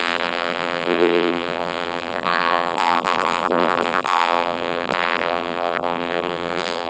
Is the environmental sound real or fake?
fake